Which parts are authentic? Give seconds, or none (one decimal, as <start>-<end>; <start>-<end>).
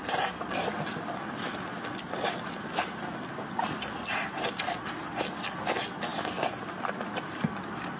0.0-8.0